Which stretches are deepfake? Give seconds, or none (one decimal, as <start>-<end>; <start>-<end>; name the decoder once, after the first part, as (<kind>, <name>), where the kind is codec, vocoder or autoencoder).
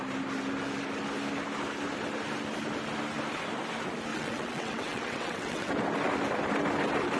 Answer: 4.1-5.7 (vocoder, WaveNeXt)